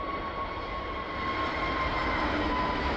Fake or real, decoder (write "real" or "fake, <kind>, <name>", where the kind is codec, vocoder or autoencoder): real